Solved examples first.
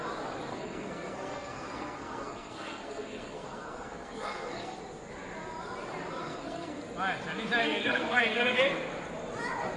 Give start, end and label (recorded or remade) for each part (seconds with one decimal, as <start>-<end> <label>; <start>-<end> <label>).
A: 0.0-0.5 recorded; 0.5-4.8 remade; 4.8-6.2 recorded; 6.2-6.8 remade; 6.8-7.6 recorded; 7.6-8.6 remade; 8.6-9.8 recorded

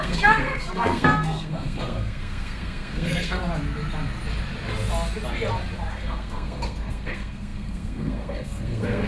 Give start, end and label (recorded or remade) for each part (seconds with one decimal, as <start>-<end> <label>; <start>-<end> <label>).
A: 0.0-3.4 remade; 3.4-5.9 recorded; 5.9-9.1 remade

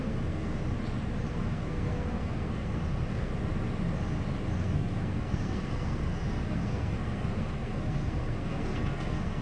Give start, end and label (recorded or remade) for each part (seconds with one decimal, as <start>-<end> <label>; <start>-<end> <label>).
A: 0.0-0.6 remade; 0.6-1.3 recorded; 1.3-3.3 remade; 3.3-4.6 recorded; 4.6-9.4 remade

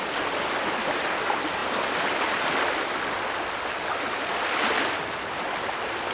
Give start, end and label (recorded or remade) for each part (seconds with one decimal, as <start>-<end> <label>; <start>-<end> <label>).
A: 0.0-6.1 recorded

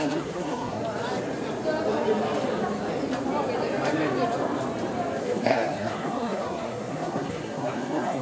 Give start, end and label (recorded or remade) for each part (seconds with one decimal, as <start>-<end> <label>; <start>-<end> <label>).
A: 0.0-0.8 remade; 0.8-5.2 recorded; 5.2-8.2 remade

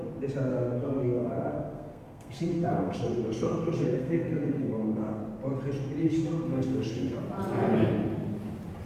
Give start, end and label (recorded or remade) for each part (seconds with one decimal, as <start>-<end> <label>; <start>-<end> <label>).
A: 0.0-0.5 recorded; 0.5-5.2 remade; 5.2-6.0 recorded; 6.0-7.2 remade; 7.2-8.9 recorded

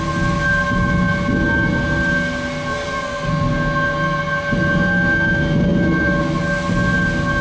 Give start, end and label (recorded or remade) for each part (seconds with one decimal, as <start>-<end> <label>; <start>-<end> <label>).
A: 0.0-2.7 recorded; 2.7-3.3 remade; 3.3-7.4 recorded